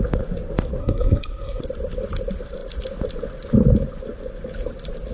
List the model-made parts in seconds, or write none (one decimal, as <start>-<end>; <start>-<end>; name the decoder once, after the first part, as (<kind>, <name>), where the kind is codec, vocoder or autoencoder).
0.8-1.6 (codec, SNAC)